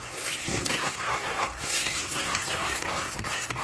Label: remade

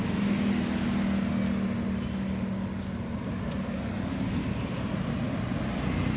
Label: recorded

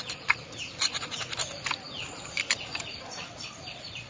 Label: recorded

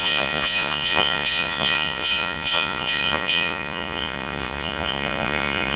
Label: remade